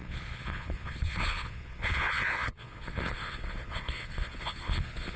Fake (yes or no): yes